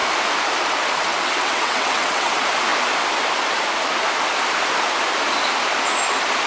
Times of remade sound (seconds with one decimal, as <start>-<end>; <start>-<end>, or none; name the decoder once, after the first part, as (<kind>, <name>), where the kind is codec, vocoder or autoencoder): 1.1-2.3 (vocoder, WaveNeXt)